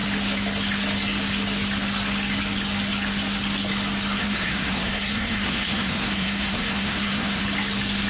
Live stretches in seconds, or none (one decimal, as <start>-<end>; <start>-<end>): 0.0-4.2; 7.4-8.1